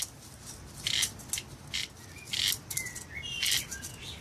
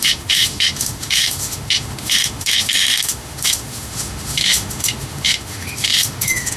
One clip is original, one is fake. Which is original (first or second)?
first